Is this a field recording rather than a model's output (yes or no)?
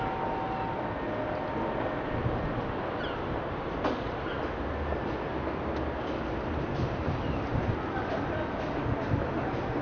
yes